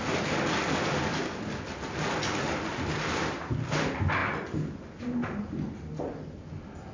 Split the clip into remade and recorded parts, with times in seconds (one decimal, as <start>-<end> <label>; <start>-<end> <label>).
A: 0.0-6.9 recorded